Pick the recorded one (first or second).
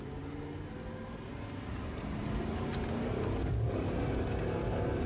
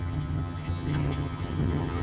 first